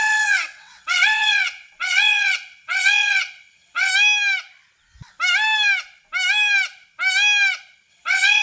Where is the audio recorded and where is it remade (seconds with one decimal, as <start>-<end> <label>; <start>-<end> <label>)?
0.0-3.9 remade; 3.9-7.9 recorded; 7.9-8.4 remade